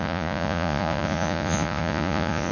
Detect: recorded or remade remade